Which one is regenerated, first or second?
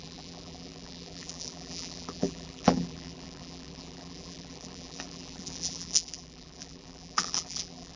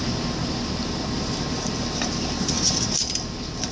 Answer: first